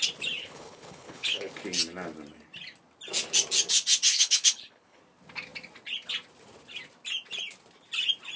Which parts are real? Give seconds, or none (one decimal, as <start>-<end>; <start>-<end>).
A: 0.0-0.4; 1.5-4.1; 5.0-8.4